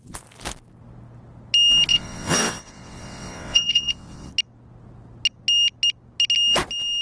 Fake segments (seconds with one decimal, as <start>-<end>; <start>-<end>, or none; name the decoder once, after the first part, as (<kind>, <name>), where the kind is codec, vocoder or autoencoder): 1.9-4.3 (vocoder, WaveNeXt)